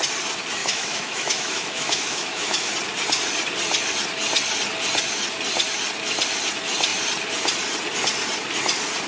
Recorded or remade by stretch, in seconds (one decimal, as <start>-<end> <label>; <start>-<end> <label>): 0.0-0.6 recorded; 0.6-2.7 remade; 2.7-9.1 recorded